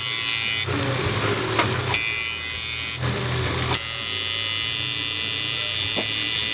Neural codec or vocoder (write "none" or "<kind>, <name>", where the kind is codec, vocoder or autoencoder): none